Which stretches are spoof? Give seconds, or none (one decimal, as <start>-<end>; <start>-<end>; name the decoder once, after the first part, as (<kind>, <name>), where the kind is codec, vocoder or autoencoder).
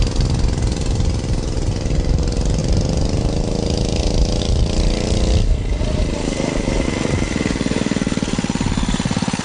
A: none